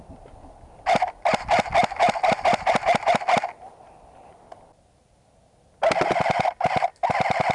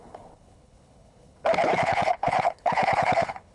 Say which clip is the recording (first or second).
first